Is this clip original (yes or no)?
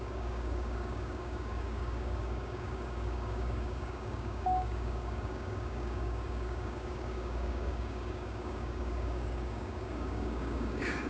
no